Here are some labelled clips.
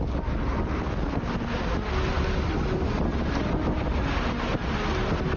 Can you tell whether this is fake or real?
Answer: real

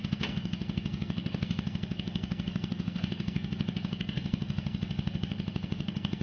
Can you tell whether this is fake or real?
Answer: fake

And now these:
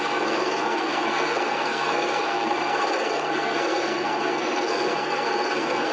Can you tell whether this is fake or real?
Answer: fake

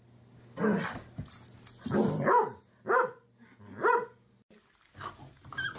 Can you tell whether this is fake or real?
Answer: real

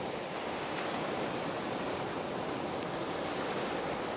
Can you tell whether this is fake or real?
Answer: real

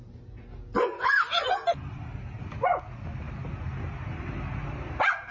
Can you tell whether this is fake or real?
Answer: real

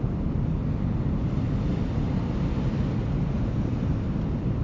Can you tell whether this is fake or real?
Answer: real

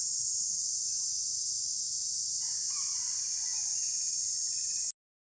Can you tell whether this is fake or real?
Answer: real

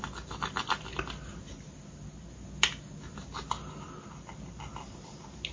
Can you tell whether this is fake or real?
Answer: real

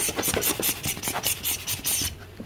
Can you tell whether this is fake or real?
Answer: real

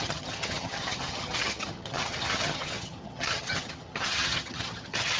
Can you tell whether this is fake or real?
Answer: fake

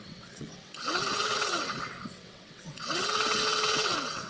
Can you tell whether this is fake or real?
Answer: fake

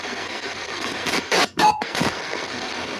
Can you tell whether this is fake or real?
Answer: fake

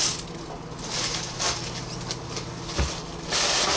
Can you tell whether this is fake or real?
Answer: real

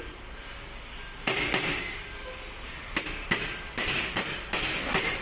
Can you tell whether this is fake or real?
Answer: real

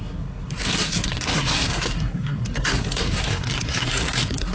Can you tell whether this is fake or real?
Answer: fake